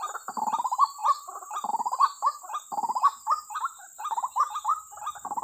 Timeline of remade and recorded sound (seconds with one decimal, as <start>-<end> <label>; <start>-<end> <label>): 0.0-1.0 remade; 1.0-1.7 recorded; 1.7-4.7 remade; 4.7-5.4 recorded